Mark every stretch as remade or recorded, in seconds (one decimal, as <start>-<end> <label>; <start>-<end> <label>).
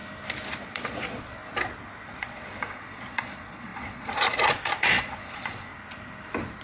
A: 0.0-0.6 recorded; 0.6-1.4 remade; 1.4-2.2 recorded; 2.2-5.7 remade; 5.7-6.6 recorded